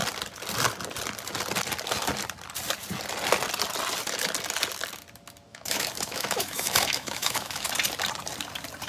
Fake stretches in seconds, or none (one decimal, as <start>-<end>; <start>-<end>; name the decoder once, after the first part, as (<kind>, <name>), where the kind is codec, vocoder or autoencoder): 5.5-7.7 (autoencoder, DAC-VAE)